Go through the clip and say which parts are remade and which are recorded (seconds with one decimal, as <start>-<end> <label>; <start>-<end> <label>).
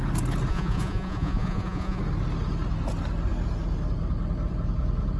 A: 0.0-0.5 recorded; 0.5-2.0 remade; 2.0-5.2 recorded